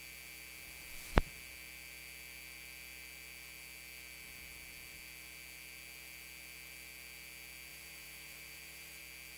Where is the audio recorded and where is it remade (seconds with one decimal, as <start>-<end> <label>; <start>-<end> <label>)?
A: 0.0-7.7 recorded; 7.7-9.0 remade; 9.0-9.4 recorded